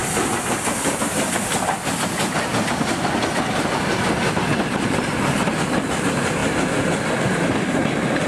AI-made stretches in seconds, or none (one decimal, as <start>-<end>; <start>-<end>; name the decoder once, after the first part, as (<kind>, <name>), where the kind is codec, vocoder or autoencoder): none